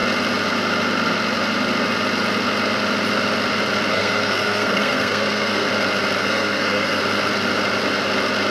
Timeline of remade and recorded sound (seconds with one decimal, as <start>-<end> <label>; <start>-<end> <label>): 0.0-3.9 recorded; 3.9-5.7 remade; 5.7-6.2 recorded; 6.2-7.0 remade; 7.0-8.5 recorded